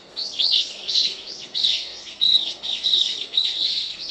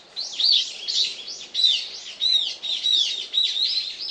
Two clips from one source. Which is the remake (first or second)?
first